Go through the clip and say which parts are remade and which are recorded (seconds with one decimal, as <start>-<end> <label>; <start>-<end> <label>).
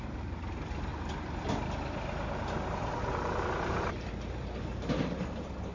0.0-5.7 recorded